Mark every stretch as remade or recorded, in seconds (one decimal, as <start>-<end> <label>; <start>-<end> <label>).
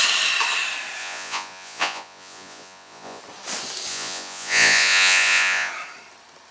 0.0-1.0 recorded; 1.0-3.2 remade; 3.2-3.9 recorded; 3.9-5.7 remade; 5.7-6.5 recorded